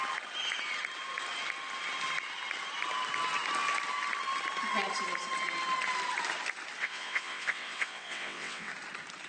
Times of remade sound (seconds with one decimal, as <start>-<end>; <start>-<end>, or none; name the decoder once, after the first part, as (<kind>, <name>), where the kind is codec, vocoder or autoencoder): 6.8-8.7 (vocoder, WaveNeXt)